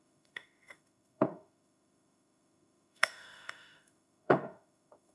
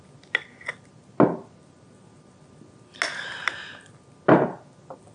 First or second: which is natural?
second